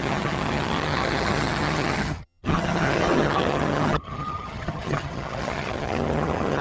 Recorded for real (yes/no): no